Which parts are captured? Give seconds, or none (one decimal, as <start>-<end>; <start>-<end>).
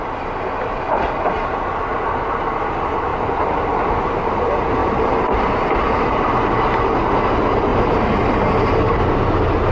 0.0-3.1; 4.3-4.8; 5.6-9.7